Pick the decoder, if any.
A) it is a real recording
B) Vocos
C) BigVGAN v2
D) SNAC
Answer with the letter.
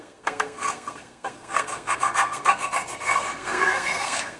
D